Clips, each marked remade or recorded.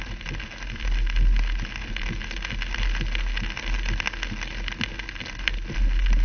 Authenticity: recorded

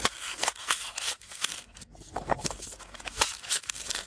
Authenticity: remade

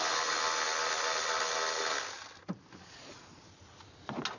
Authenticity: recorded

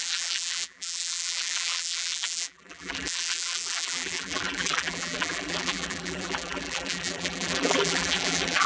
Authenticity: remade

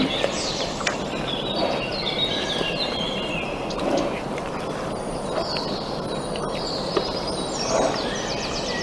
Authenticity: recorded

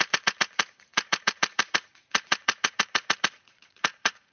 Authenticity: remade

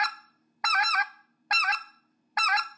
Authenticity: recorded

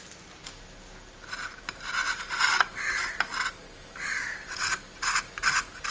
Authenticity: recorded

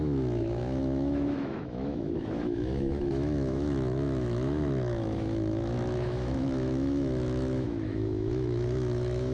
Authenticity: remade